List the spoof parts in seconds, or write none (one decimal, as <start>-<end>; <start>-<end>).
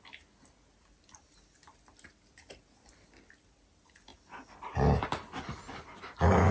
none